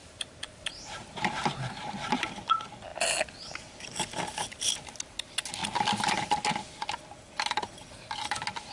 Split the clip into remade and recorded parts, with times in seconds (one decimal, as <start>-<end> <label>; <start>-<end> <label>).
0.0-2.3 remade; 2.3-8.7 recorded